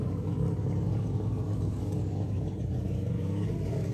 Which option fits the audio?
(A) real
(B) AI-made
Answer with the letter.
B